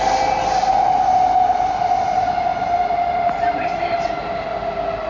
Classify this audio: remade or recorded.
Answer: recorded